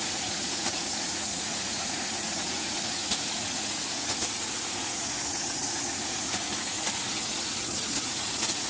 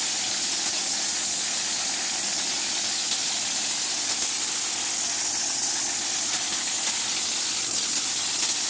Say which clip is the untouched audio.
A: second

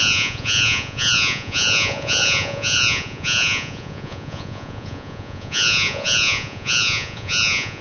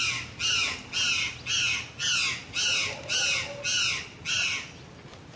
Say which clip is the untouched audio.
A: second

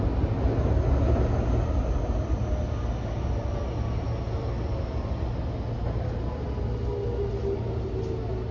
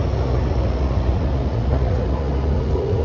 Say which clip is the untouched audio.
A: first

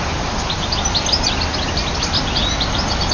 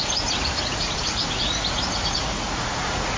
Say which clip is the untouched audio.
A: first